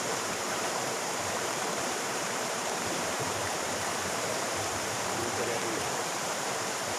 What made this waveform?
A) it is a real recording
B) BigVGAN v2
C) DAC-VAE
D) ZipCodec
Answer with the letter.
B